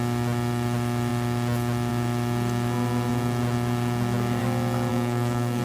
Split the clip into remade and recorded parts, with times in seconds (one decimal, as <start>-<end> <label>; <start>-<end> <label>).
0.0-4.9 recorded; 4.9-5.6 remade